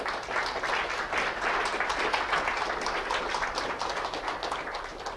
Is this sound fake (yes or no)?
no